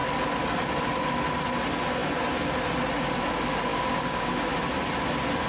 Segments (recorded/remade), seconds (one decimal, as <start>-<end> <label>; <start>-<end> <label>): 0.0-3.7 recorded; 3.7-4.6 remade; 4.6-5.5 recorded